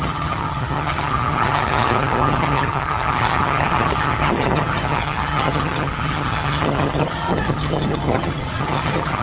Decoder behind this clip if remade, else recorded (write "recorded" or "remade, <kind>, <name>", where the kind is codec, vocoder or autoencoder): remade, vocoder, HiFi-GAN